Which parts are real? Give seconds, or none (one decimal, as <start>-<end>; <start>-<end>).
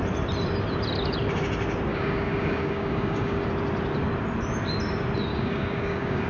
0.0-1.9; 3.5-5.3